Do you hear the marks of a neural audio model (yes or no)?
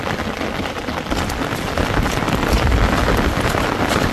no